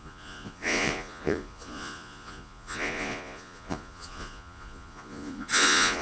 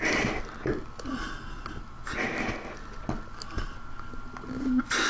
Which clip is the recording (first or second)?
second